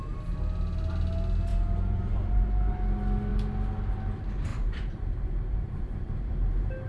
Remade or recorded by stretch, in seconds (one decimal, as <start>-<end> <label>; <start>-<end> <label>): 0.0-1.5 recorded; 1.5-2.7 remade; 2.7-4.5 recorded; 4.5-6.3 remade; 6.3-6.9 recorded